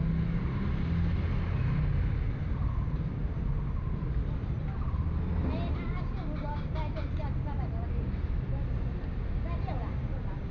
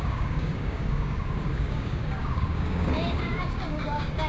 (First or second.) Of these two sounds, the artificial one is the second